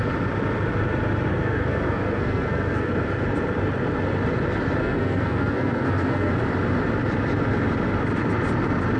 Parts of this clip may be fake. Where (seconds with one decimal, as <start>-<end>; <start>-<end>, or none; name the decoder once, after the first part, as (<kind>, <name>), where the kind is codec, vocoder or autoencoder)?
1.3-2.9 (codec, SNAC); 4.8-6.3